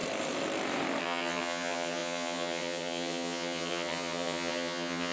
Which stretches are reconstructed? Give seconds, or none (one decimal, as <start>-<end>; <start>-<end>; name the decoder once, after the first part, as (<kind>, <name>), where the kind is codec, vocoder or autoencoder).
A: 1.0-5.1 (vocoder, HiFi-GAN)